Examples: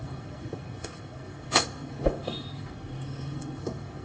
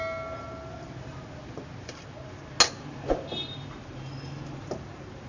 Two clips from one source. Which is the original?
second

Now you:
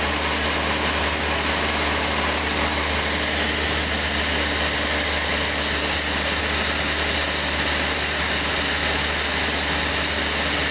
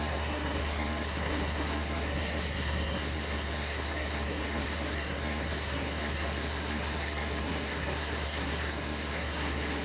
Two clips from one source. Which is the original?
first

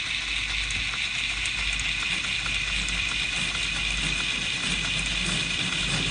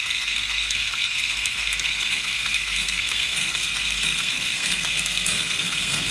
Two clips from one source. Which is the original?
first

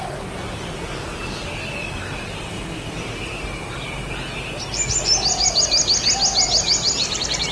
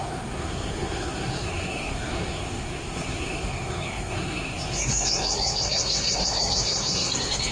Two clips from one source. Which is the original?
first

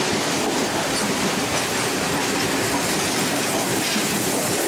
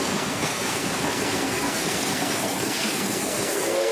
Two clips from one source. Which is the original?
first